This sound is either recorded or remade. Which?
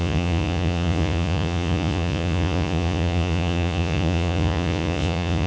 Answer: remade